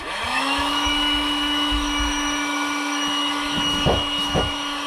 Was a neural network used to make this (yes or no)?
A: yes